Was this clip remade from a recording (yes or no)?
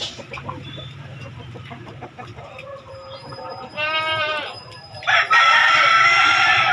yes